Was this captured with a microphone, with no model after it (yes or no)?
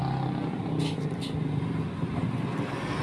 yes